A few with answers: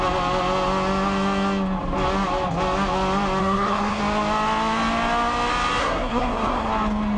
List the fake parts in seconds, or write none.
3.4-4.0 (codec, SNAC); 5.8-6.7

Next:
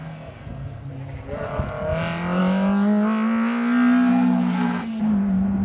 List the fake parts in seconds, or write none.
0.0-0.9 (codec, SNAC); 4.1-5.0

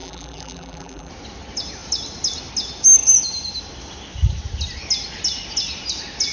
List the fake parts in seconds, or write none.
0.0-1.1 (vocoder, BigVGAN v2)